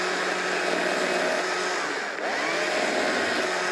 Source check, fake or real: real